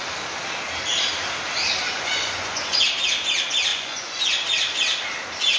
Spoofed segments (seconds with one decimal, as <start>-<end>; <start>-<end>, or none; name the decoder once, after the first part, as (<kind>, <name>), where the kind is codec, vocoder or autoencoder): 1.9-2.8 (vocoder, Vocos); 3.7-4.2